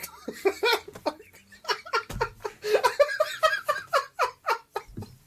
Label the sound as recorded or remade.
recorded